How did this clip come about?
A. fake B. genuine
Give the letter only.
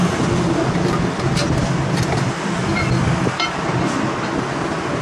B